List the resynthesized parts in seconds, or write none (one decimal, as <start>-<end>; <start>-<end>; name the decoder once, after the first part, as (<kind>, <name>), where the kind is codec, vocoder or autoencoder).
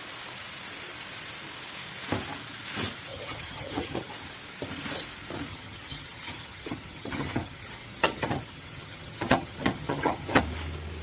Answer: 3.1-4.1 (vocoder, HiFi-GAN); 5.5-10.4